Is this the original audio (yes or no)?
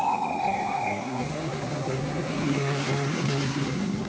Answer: no